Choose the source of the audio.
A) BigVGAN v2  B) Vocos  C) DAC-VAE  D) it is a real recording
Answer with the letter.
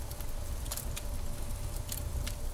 D